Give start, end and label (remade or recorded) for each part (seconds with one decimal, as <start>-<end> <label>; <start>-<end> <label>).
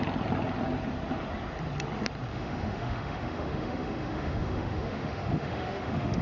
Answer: 0.0-2.3 recorded; 2.3-6.2 remade